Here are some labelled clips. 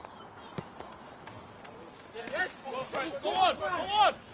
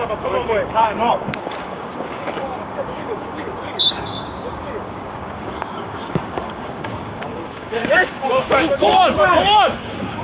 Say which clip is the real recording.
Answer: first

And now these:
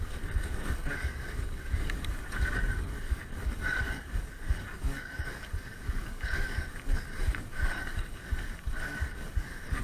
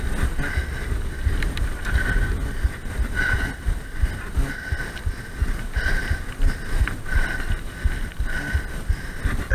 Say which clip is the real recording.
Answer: second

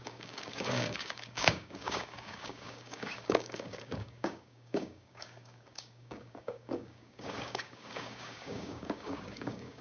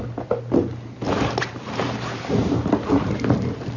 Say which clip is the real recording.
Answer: second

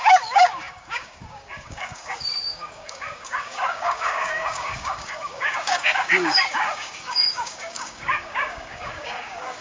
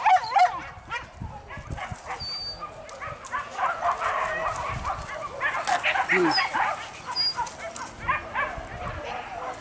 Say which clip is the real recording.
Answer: second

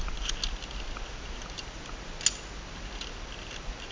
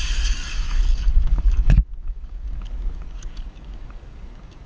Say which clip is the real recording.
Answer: first